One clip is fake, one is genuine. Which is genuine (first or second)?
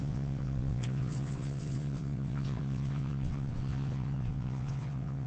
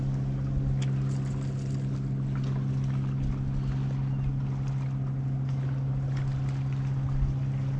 second